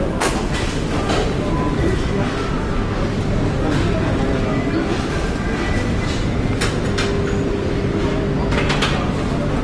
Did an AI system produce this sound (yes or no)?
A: no